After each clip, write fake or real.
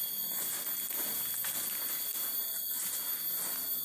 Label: real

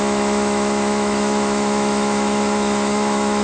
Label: fake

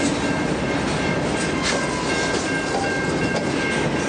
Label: real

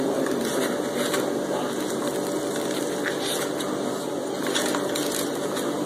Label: real